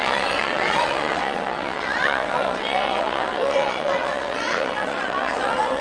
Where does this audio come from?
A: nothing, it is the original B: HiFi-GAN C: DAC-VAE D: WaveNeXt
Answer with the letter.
D